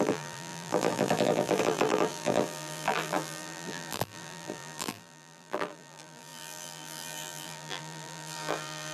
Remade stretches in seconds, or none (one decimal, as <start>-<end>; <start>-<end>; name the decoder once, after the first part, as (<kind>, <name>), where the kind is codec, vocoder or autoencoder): 0.0-8.9 (vocoder, BigVGAN v2)